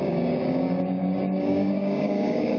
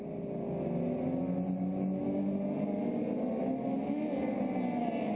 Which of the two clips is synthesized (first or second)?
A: first